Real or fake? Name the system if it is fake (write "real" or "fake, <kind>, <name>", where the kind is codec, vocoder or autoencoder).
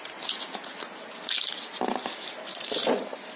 real